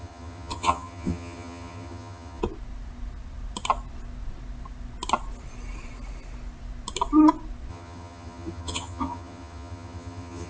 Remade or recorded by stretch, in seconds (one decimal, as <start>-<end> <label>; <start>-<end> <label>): 0.0-2.4 remade; 2.4-7.7 recorded; 7.7-10.5 remade